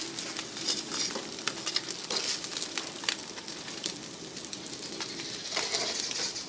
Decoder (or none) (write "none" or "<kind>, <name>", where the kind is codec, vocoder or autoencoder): none